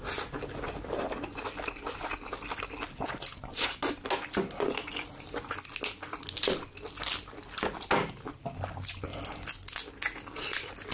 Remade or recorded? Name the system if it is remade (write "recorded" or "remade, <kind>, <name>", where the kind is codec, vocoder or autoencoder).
recorded